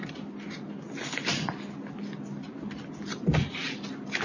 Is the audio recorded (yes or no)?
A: yes